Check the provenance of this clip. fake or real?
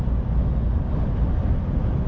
real